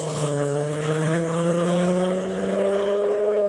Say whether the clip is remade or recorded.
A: remade